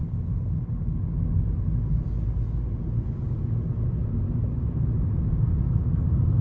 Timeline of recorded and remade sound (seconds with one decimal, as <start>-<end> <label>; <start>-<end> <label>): 0.0-4.0 recorded; 4.0-6.4 remade